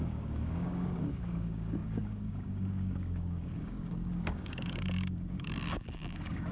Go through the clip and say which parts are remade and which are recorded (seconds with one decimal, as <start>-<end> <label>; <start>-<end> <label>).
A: 0.0-6.5 remade